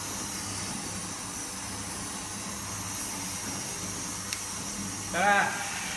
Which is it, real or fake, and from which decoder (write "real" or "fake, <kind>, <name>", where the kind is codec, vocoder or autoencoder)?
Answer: real